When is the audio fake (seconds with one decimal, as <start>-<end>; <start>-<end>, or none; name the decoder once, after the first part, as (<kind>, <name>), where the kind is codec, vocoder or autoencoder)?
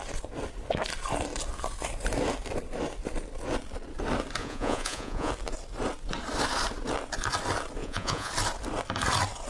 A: 4.4-5.3 (vocoder, Vocos); 7.8-8.3